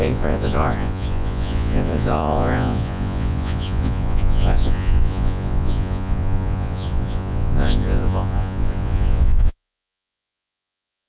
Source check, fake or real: fake